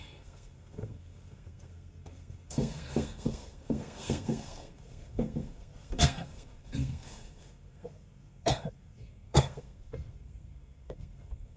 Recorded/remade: remade